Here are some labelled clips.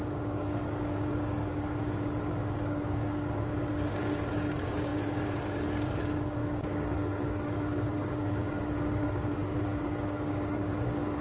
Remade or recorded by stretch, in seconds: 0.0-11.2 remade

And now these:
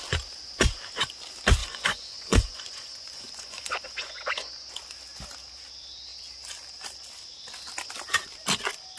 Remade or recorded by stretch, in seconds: 0.0-1.6 recorded; 1.6-4.7 remade; 4.7-9.0 recorded

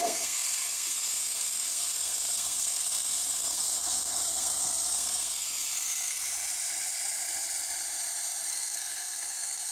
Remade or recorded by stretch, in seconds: 0.0-6.2 remade; 6.2-8.5 recorded; 8.5-9.7 remade

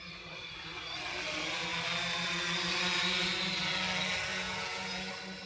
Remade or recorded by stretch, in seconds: 0.0-4.3 recorded; 4.3-5.1 remade; 5.1-5.5 recorded

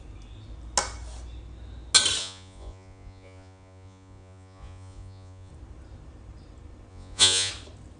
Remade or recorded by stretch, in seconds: 0.0-2.2 recorded; 2.2-5.5 remade; 5.5-6.9 recorded; 6.9-7.5 remade; 7.5-8.0 recorded

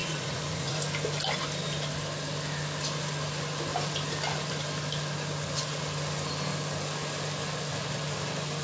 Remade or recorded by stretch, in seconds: 0.0-0.8 remade; 0.8-8.6 recorded

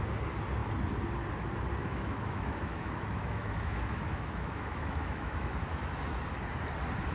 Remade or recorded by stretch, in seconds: 0.0-1.8 recorded; 1.8-6.1 remade; 6.1-7.1 recorded

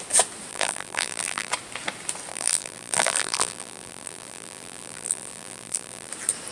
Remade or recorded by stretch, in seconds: 0.0-0.5 recorded; 0.5-1.5 remade; 1.5-2.3 recorded; 2.3-6.1 remade; 6.1-6.5 recorded